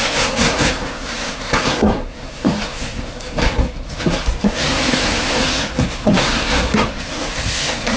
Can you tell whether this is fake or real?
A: fake